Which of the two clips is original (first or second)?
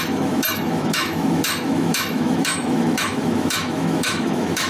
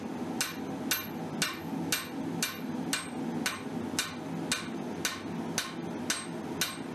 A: second